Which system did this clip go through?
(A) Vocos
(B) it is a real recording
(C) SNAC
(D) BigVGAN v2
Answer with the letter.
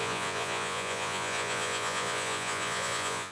A